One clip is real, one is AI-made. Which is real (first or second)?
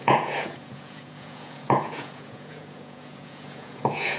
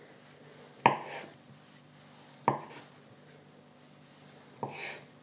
second